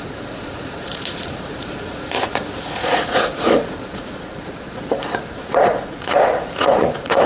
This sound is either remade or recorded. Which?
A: remade